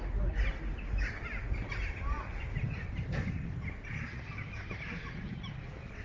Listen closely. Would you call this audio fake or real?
real